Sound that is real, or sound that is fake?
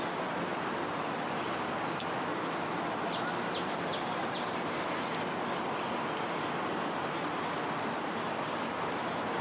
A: real